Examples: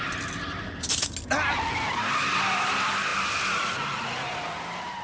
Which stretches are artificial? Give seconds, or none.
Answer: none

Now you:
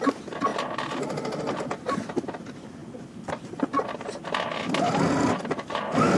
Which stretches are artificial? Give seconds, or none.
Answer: none

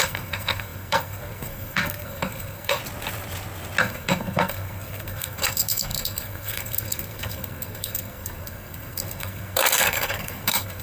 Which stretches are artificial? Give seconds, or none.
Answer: 0.0-2.8 (codec, SNAC); 3.8-10.8

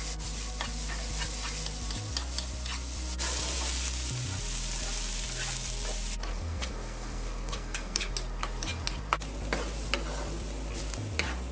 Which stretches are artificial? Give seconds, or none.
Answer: 6.3-8.1 (codec, SNAC)

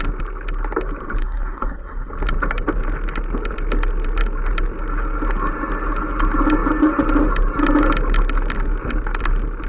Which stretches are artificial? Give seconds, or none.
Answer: 1.2-2.1 (codec, SNAC)

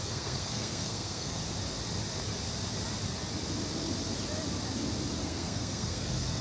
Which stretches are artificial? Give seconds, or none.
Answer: 0.0-1.4 (codec, SNAC); 5.2-6.4

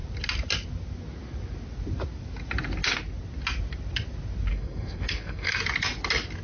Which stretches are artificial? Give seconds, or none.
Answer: 4.5-5.6 (codec, SNAC)